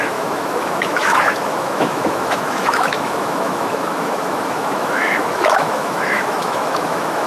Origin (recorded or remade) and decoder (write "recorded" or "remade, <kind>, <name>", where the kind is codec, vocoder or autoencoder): remade, autoencoder, DAC-VAE